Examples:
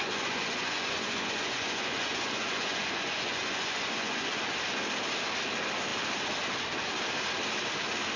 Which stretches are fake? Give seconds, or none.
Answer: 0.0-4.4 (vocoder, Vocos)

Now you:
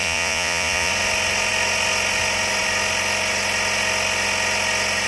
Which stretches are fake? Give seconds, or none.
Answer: 0.0-0.9 (vocoder, Vocos)

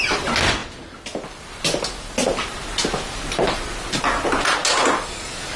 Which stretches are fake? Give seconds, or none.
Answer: none

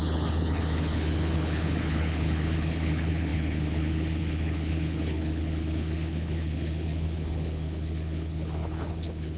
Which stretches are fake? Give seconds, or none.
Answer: 0.0-9.4 (codec, HILCodec)

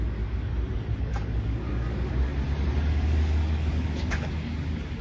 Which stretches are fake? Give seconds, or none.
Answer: 0.0-0.5 (codec, DAC); 1.0-2.3; 2.9-5.0

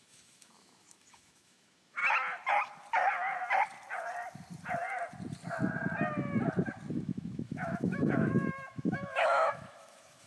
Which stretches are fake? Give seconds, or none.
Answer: 0.0-2.0 (autoencoder, DAC-VAE); 6.9-10.3

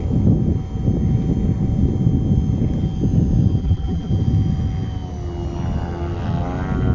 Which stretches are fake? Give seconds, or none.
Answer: 3.6-4.1 (vocoder, BigVGAN v2)

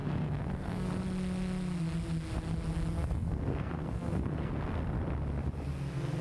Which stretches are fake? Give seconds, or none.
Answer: 0.0-0.9 (codec, SNAC); 2.9-4.5